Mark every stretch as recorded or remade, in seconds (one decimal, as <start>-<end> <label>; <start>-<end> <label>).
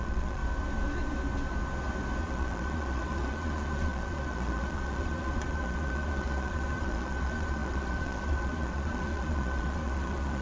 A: 0.0-0.4 remade; 0.4-2.2 recorded; 2.2-10.4 remade